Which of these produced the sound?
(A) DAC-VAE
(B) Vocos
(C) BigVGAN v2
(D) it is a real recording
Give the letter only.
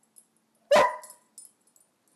D